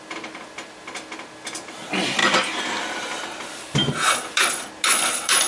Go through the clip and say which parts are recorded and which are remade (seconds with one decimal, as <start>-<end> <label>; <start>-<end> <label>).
0.0-5.5 recorded